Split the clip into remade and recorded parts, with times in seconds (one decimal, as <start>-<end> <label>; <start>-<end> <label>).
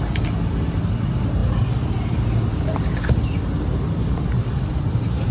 0.0-1.4 recorded; 1.4-2.2 remade; 2.2-4.4 recorded; 4.4-5.3 remade